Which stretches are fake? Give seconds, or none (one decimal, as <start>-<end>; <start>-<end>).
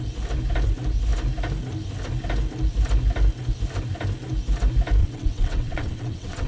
5.0-6.5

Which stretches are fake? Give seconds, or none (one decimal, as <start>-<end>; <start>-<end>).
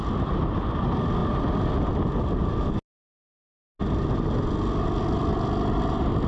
none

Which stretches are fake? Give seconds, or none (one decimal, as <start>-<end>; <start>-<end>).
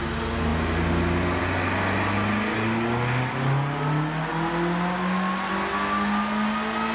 none